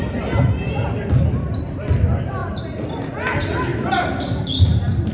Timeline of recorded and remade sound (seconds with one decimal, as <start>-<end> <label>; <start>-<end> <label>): 0.0-5.1 recorded